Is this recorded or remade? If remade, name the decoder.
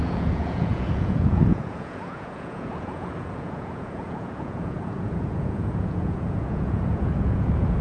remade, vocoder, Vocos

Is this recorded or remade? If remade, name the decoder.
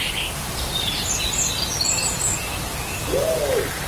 recorded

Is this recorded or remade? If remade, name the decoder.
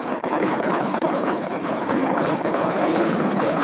remade, codec, HILCodec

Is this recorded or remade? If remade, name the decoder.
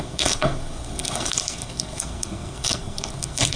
remade, codec, SNAC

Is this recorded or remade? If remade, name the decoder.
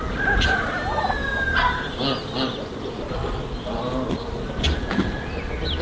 recorded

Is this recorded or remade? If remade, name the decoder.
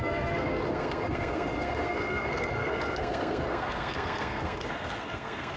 remade, codec, SNAC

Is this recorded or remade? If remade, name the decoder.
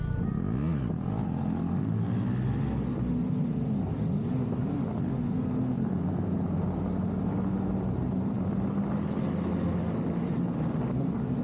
recorded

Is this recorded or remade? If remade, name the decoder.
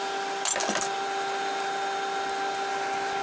recorded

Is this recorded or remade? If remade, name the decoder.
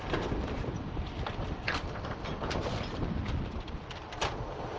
remade, vocoder, BigVGAN v2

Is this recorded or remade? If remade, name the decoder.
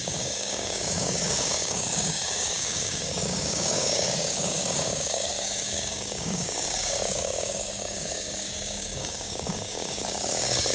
remade, codec, DAC